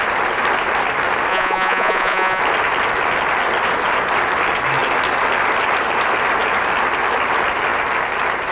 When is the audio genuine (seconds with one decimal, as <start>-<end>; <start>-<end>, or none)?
0.0-1.3; 2.4-8.5